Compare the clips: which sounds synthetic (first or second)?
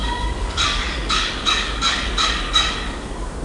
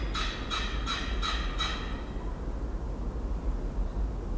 first